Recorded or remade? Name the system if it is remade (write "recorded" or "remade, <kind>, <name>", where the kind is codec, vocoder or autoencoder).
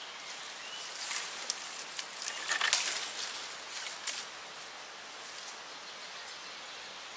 recorded